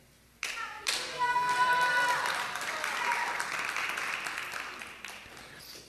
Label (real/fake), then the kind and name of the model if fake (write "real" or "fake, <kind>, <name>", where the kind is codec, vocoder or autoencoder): fake, vocoder, BigVGAN v2